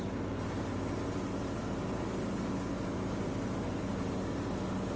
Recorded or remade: recorded